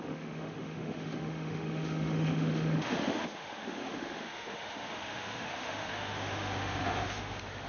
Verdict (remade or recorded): remade